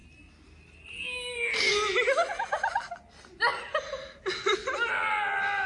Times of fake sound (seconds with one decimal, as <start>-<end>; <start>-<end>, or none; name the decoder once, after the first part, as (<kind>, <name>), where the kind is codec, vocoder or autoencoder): none